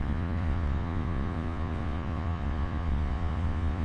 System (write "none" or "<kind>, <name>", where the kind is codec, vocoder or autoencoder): vocoder, Vocos